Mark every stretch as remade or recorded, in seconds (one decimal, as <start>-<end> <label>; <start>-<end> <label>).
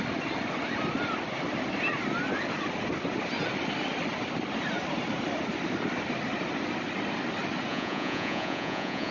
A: 0.0-7.7 recorded; 7.7-9.1 remade